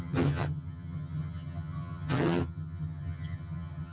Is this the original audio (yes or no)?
no